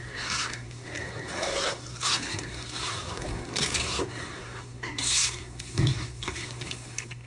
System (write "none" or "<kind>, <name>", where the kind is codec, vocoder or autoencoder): codec, SNAC